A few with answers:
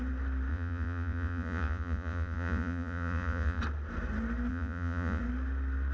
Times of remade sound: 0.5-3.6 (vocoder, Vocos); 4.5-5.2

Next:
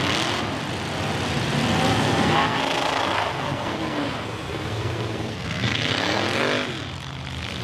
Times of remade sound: 1.9-6.4 (codec, SNAC)